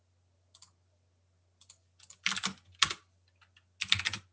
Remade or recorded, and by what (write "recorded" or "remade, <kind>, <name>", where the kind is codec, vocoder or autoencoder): recorded